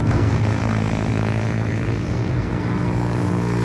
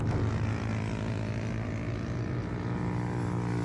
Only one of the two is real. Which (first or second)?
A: second